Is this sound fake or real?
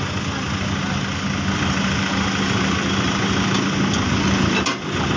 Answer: real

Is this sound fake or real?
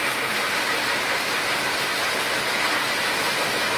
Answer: real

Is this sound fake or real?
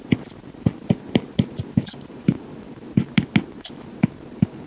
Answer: real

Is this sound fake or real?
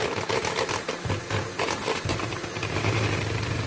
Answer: fake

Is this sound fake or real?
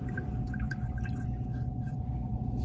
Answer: real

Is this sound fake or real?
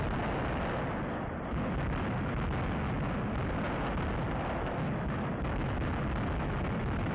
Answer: real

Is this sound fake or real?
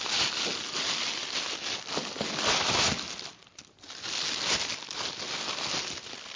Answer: real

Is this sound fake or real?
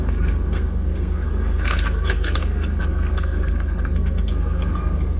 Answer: fake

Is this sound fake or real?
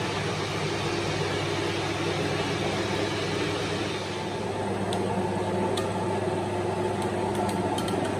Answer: real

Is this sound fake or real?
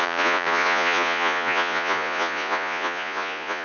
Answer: fake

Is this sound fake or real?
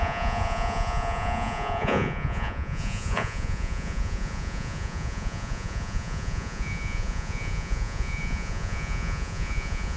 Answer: fake